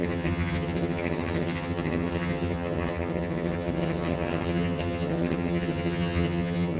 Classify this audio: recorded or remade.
remade